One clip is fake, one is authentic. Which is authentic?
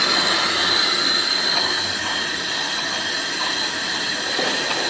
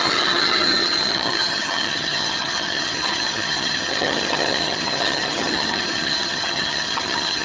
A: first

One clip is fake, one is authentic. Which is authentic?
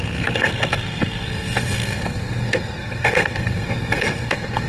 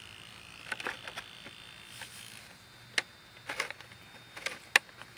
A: second